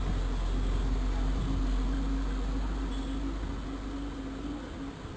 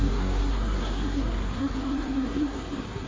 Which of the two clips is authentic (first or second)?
first